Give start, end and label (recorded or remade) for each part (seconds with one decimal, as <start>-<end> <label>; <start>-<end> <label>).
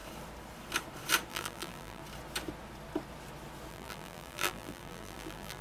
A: 0.0-1.3 recorded; 1.3-2.0 remade; 2.0-3.7 recorded; 3.7-5.6 remade